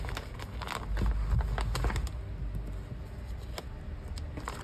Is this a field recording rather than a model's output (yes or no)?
yes